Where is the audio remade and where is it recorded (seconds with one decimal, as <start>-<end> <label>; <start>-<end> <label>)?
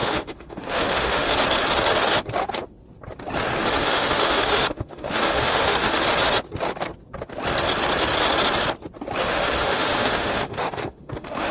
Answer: 0.0-1.3 remade; 1.3-3.8 recorded; 3.8-6.0 remade; 6.0-9.2 recorded; 9.2-11.5 remade